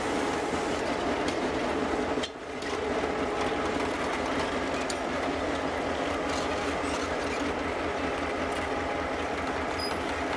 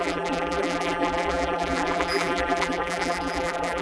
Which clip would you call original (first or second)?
first